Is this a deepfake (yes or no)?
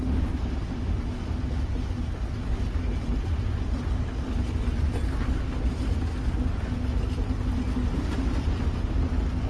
no